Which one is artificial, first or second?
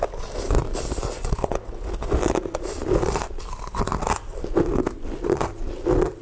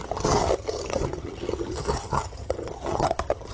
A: second